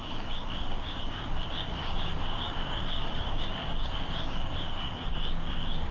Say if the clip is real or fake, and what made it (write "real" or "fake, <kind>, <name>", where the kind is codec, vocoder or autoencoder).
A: fake, codec, DAC